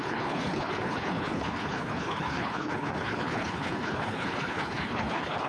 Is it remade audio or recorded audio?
remade